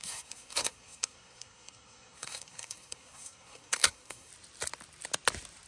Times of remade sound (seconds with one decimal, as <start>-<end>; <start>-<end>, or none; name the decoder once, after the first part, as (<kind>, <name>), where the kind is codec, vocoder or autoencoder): 0.0-4.3 (codec, SNAC)